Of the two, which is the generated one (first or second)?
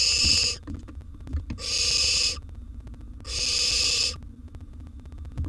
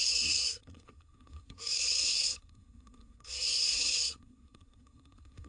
second